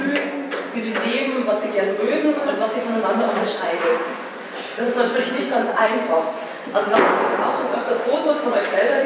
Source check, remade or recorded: remade